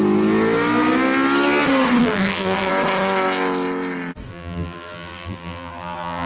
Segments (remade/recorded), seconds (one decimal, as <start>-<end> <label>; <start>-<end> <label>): 0.0-2.0 recorded; 2.0-2.7 remade; 2.7-4.3 recorded; 4.3-6.3 remade